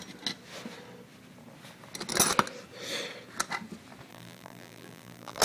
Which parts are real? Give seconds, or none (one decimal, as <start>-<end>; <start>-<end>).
0.0-4.1